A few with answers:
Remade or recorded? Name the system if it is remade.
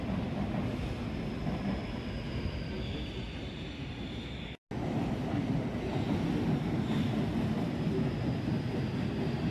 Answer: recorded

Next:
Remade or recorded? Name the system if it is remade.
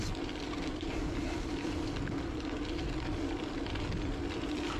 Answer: recorded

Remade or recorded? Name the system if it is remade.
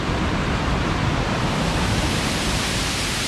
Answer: remade, vocoder, BigVGAN v2